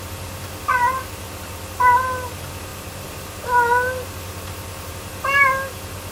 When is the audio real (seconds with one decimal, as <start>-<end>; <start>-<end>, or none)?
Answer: 0.0-6.1

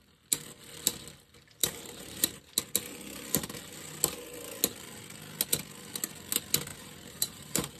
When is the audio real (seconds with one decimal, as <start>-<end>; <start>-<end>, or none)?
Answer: 0.0-1.6; 2.4-6.7

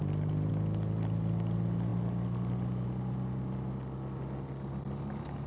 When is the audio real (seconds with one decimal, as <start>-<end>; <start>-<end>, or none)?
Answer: 0.5-5.5

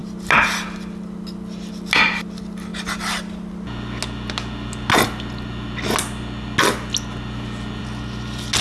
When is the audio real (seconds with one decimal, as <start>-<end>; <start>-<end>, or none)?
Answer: 0.0-8.6

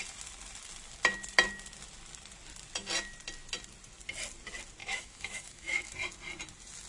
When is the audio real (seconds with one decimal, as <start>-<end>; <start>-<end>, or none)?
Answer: 0.0-4.8; 5.9-6.9

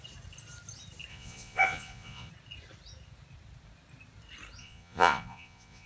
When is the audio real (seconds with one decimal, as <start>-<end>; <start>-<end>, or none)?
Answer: 0.0-1.1; 2.3-4.6

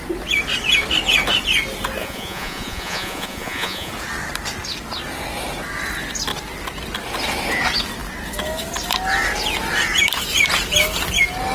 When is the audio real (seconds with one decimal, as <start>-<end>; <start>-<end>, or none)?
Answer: 0.0-2.0; 3.9-11.5

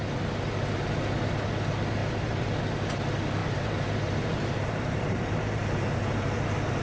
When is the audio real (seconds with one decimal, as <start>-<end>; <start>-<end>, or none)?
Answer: 0.0-2.0; 2.6-3.4; 6.3-6.8